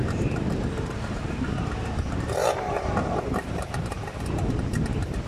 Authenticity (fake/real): fake